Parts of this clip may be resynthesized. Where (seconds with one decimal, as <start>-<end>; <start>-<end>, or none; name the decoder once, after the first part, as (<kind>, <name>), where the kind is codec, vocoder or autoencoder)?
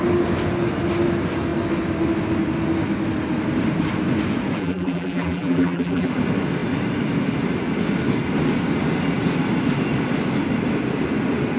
4.6-6.1 (vocoder, BigVGAN v2)